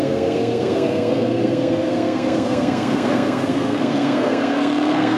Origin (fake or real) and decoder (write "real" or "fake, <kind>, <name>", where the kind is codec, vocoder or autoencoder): fake, codec, SNAC